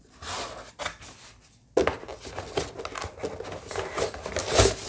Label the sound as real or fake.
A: real